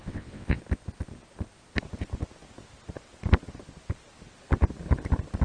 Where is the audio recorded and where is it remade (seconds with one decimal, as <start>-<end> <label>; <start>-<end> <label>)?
0.0-0.6 remade; 0.6-5.4 recorded